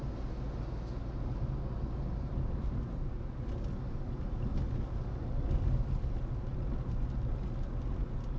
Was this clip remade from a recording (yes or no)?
no